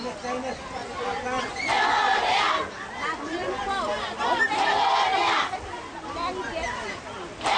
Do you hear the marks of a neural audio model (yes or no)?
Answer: no